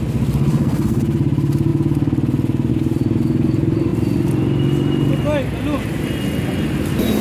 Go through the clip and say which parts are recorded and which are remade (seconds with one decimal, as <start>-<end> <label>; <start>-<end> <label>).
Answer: 0.0-0.5 recorded; 0.5-1.0 remade; 1.0-7.2 recorded